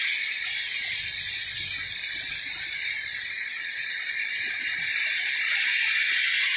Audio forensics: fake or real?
real